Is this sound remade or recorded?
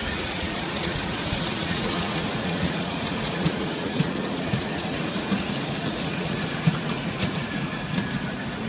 remade